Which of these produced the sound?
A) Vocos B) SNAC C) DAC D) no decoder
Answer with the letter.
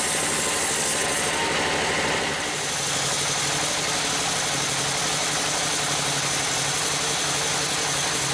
D